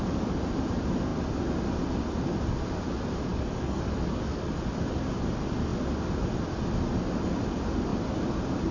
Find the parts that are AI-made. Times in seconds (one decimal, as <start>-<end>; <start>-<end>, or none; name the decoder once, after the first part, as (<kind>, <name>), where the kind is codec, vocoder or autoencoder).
3.3-4.6 (codec, DAC)